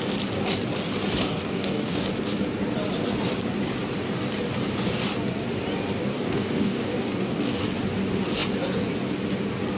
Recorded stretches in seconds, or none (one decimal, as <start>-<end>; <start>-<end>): 0.0-1.4; 2.1-6.1; 7.6-9.8